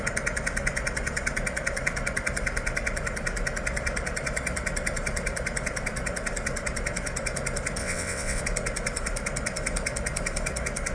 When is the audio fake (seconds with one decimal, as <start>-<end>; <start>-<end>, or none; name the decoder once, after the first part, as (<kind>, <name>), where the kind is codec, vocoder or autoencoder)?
7.8-8.4 (vocoder, WaveNeXt)